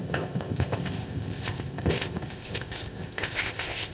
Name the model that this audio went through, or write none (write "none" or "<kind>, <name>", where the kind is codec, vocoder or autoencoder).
codec, ZipCodec